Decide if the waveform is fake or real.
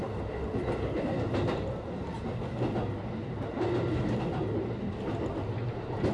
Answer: real